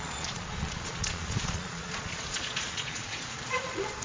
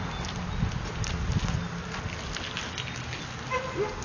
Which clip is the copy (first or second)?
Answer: first